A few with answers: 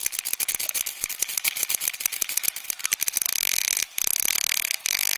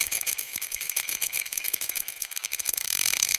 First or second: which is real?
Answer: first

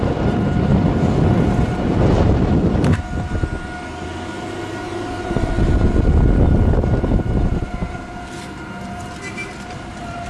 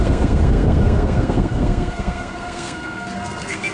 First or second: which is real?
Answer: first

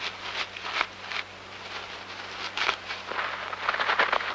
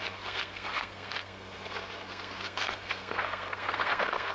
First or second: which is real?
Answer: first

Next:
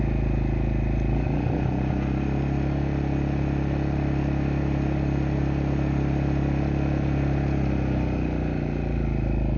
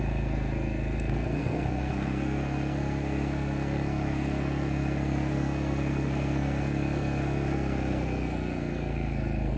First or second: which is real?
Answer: first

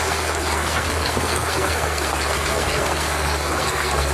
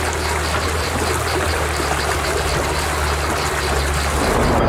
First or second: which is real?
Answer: second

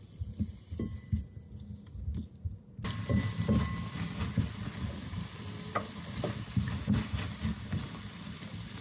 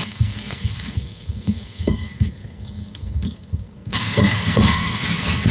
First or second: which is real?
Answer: first